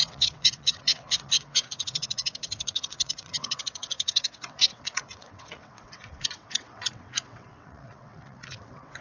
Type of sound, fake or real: fake